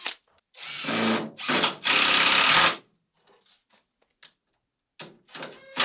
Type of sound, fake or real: real